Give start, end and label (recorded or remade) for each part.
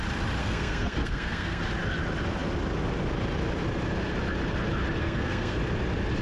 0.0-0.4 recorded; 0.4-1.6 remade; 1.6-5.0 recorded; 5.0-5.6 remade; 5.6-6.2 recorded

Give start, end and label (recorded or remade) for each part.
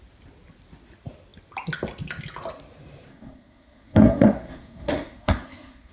0.0-3.1 recorded; 3.1-5.9 remade